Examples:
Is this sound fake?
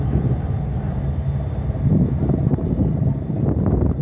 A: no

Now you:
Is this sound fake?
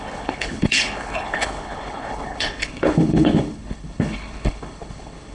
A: yes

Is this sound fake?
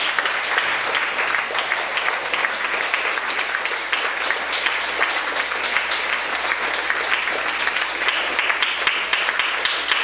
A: no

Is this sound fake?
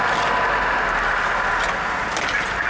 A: no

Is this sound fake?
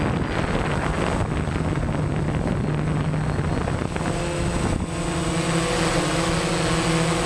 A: no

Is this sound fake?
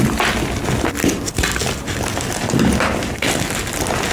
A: no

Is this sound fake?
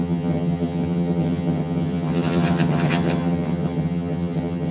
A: yes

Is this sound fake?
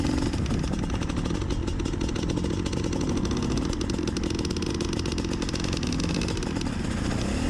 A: no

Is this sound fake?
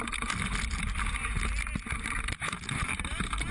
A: no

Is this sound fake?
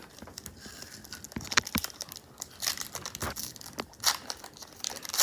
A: no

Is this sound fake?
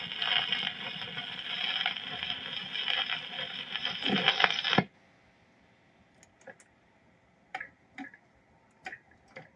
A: no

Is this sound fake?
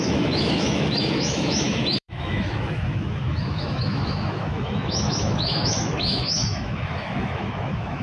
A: yes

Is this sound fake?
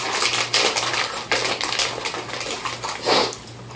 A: no